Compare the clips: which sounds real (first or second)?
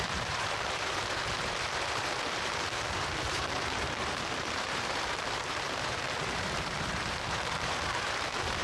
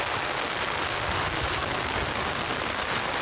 second